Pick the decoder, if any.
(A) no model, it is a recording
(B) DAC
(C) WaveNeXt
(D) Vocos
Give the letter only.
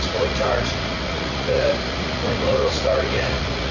D